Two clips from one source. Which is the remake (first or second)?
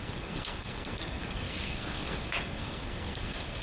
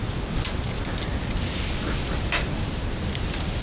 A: first